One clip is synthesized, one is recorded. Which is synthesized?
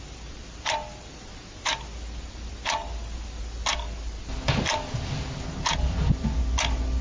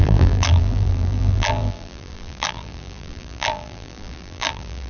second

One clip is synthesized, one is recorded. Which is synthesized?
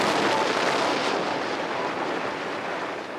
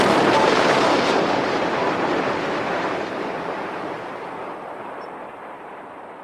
second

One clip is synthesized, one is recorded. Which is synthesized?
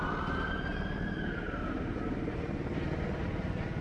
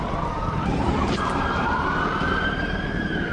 second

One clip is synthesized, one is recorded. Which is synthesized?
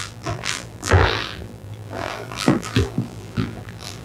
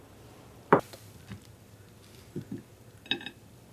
first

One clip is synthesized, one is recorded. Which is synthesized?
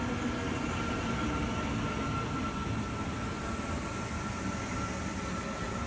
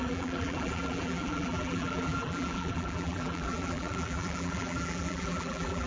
second